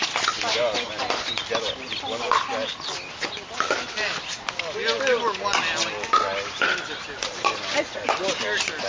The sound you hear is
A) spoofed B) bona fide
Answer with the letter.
B